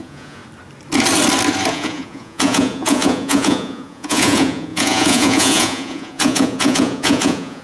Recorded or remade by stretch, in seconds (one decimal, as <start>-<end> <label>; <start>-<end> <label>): 0.0-0.4 remade; 0.4-1.7 recorded; 1.7-7.6 remade